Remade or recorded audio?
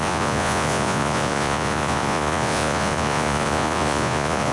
remade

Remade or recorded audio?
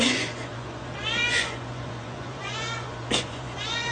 remade